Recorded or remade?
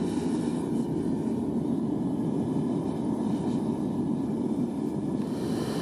recorded